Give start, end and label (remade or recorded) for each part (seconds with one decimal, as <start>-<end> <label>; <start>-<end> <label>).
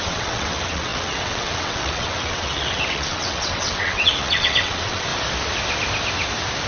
0.0-5.1 remade; 5.1-6.7 recorded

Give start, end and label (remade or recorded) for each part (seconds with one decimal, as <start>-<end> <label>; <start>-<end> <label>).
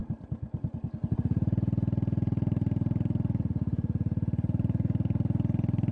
0.0-5.9 recorded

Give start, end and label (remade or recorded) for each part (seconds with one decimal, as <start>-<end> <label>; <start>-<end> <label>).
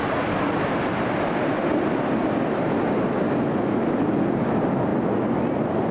0.0-5.9 recorded